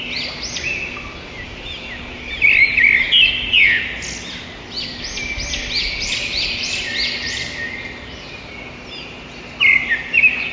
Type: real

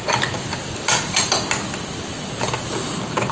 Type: real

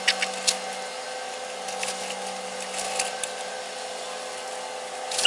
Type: real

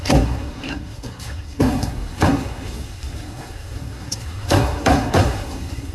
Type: fake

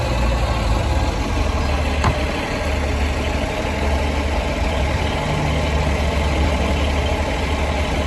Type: real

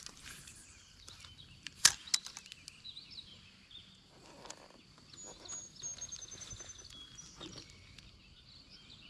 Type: real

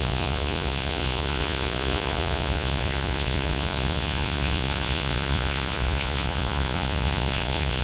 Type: fake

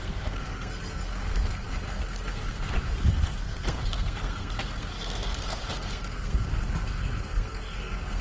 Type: fake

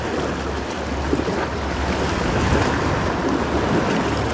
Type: real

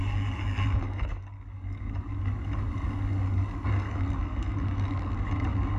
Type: fake